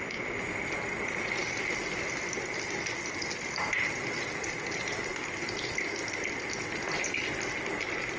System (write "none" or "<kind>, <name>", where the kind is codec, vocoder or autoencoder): none